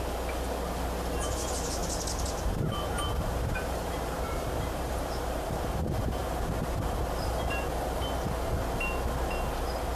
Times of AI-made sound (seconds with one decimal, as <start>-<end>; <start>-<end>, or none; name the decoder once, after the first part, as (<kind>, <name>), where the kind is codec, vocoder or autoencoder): 1.8-5.6 (vocoder, BigVGAN v2); 6.2-7.6